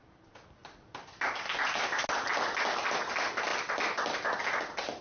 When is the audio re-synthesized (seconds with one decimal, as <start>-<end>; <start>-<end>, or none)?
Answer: none